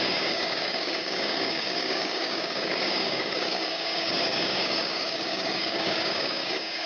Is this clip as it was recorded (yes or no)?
no